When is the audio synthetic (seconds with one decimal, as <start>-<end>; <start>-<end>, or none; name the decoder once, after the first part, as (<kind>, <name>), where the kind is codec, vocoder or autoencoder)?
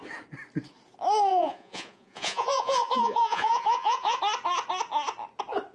1.3-4.2 (vocoder, Vocos)